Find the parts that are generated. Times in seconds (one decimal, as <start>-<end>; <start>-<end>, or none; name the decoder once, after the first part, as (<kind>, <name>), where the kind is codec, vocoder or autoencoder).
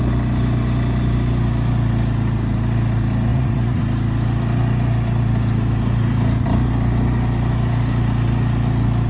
3.3-3.8 (vocoder, Vocos)